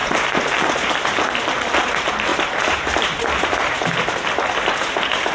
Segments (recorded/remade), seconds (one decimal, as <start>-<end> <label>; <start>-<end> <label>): 0.0-0.9 remade; 0.9-2.3 recorded; 2.3-4.0 remade; 4.0-5.3 recorded